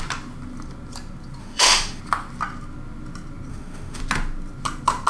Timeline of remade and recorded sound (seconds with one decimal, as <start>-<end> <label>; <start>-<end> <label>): 0.0-1.4 recorded; 1.4-2.0 remade; 2.0-3.5 recorded; 3.5-4.0 remade; 4.0-5.1 recorded

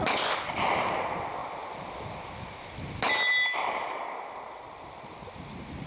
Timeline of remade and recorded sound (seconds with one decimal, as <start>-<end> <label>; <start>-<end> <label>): 0.0-5.9 recorded

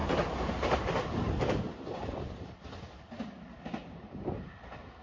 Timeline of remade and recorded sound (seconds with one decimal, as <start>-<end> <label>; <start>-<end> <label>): 0.0-3.0 remade; 3.0-3.8 recorded; 3.8-4.5 remade; 4.5-5.0 recorded

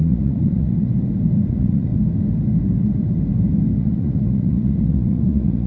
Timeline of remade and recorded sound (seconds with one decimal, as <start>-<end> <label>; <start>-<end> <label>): 0.0-0.9 remade; 0.9-1.5 recorded; 1.5-1.9 remade; 1.9-3.8 recorded; 3.8-5.7 remade

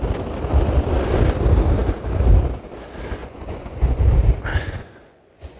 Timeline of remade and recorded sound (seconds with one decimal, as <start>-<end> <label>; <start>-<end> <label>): 0.0-3.2 recorded; 3.2-4.0 remade; 4.0-4.5 recorded; 4.5-5.6 remade